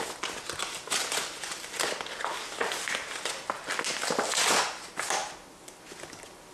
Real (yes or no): yes